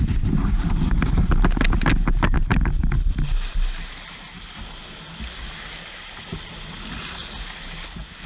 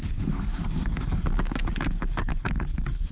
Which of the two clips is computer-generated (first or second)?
second